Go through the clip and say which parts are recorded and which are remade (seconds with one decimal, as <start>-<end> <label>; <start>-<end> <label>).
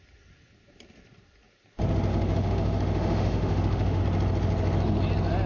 0.0-2.1 recorded; 2.1-4.0 remade; 4.0-5.5 recorded